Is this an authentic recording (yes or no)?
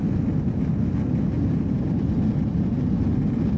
yes